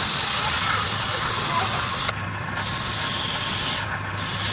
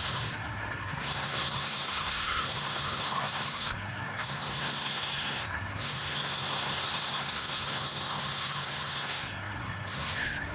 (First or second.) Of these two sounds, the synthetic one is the second